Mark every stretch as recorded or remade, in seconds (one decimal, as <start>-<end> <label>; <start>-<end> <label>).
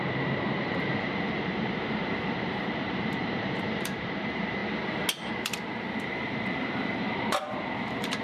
0.0-4.6 remade; 4.6-5.3 recorded; 5.3-8.2 remade